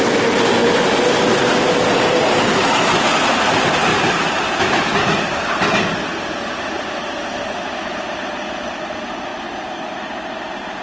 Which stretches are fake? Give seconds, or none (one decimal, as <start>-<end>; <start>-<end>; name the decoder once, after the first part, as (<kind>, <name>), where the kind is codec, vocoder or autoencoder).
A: none